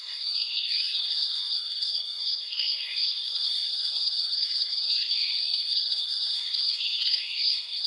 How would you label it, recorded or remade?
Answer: remade